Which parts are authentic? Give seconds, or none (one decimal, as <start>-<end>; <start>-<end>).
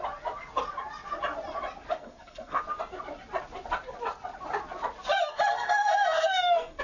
0.0-1.9; 2.6-5.5